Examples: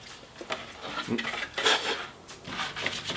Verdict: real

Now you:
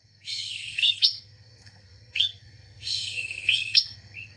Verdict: fake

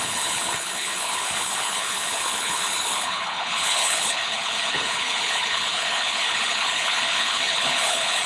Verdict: fake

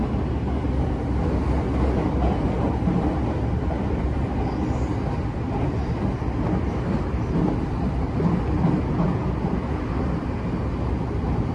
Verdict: real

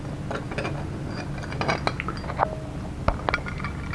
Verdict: real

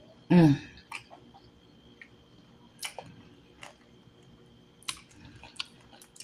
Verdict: real